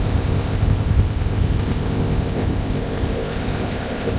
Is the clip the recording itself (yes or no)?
no